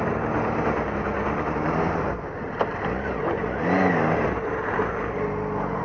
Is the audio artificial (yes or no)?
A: no